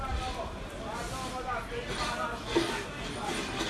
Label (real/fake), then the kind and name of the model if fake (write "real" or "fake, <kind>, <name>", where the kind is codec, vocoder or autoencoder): real